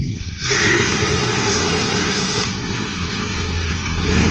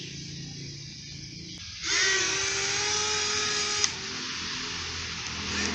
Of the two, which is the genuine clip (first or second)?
second